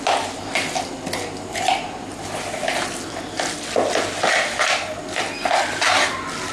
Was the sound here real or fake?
real